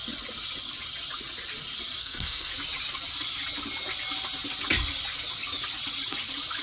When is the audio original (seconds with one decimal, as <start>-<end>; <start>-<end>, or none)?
0.0-2.0; 2.5-6.6